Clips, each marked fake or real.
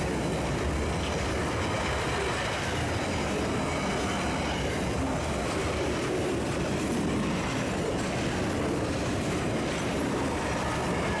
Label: real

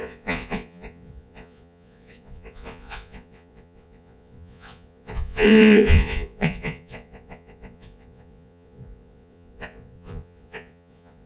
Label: fake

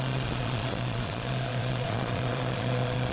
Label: fake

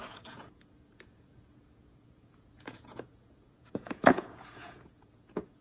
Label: fake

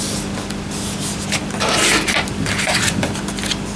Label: real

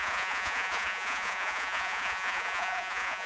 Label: fake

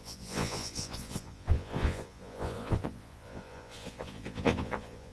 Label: fake